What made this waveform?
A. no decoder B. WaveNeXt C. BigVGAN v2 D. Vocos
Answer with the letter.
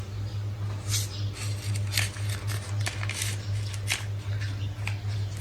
A